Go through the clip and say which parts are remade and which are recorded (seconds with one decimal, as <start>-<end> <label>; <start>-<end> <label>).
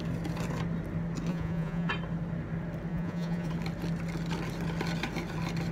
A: 0.0-1.3 recorded; 1.3-1.9 remade; 1.9-2.9 recorded; 2.9-3.5 remade; 3.5-5.7 recorded